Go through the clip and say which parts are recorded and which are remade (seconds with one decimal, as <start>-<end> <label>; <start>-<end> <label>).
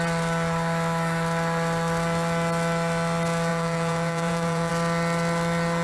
0.0-3.5 recorded; 3.5-4.7 remade; 4.7-5.8 recorded